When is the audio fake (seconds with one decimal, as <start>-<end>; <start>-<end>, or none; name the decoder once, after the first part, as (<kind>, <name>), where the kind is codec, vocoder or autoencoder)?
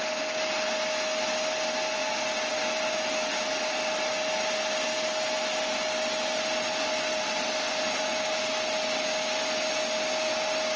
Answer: none